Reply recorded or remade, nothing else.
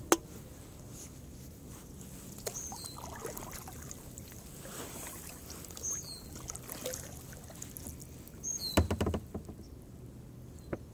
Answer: recorded